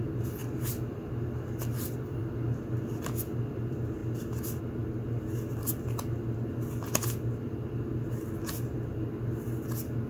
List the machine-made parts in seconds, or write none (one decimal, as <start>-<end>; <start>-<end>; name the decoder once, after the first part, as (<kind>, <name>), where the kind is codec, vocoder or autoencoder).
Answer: none